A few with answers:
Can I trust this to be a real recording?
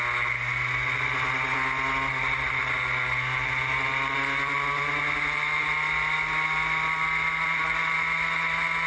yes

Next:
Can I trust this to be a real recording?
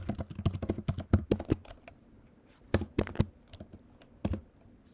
yes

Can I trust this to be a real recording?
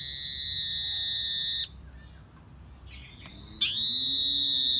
yes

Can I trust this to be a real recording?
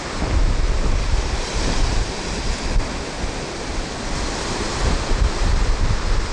yes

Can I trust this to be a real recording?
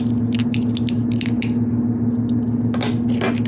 yes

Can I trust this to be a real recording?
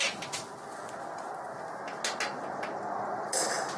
yes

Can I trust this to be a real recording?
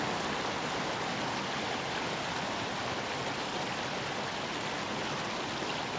yes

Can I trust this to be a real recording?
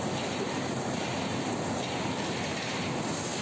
yes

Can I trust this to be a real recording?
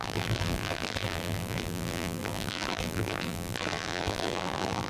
no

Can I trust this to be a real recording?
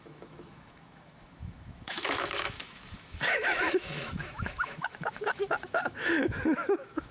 no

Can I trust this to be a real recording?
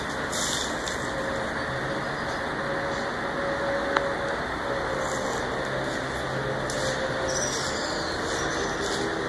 yes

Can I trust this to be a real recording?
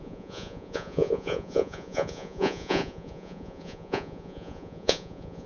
no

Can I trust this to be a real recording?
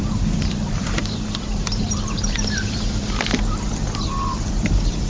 no